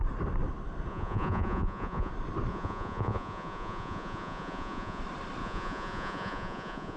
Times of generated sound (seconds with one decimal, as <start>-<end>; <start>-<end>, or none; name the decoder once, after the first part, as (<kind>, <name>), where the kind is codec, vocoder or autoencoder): 0.9-2.1 (vocoder, Vocos); 2.5-5.0; 5.4-7.0